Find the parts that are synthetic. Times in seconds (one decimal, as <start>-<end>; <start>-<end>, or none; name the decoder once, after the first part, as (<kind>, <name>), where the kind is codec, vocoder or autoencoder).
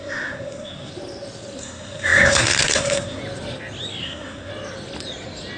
0.0-0.9 (codec, SNAC); 1.6-3.2; 4.0-4.5